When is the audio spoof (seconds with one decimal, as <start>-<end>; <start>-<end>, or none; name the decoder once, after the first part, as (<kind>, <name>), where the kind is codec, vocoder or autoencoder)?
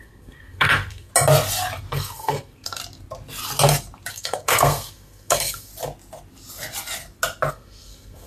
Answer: 0.0-1.1 (codec, SNAC); 1.9-2.8; 4.1-5.7; 7.5-8.3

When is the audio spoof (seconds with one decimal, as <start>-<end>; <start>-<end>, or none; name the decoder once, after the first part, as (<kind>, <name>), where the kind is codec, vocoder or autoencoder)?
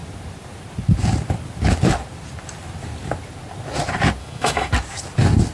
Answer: 4.2-4.7 (autoencoder, DAC-VAE)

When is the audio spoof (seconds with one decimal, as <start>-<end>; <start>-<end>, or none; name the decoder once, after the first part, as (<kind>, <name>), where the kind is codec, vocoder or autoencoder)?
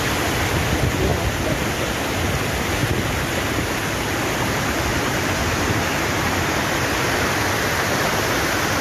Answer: 2.8-3.8 (vocoder, BigVGAN v2); 4.9-7.1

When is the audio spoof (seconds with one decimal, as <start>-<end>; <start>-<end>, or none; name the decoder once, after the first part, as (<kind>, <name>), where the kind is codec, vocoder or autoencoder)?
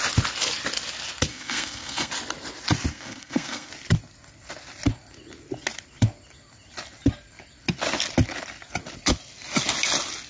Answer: 1.3-2.1 (codec, SNAC); 2.9-3.7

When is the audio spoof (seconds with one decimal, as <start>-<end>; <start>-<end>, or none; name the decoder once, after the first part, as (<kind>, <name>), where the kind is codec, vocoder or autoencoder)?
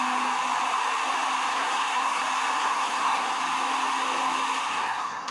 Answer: 1.5-2.2 (codec, SNAC); 2.6-3.4; 4.6-5.3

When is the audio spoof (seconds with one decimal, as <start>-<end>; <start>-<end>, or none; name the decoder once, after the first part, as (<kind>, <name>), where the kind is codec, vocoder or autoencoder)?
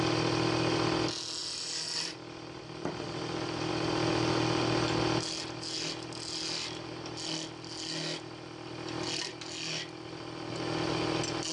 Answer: 1.4-3.7 (vocoder, BigVGAN v2)